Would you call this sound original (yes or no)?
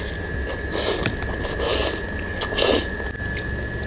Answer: yes